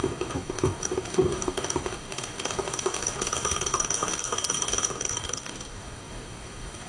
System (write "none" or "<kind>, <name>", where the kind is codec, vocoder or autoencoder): codec, DAC